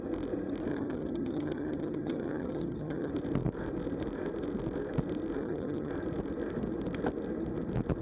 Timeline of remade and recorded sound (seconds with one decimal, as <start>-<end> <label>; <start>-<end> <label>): 0.0-0.7 recorded; 0.7-3.1 remade; 3.1-5.4 recorded; 5.4-5.9 remade; 5.9-8.0 recorded